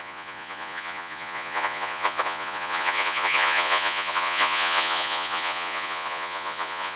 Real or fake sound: fake